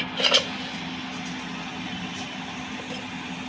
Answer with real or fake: real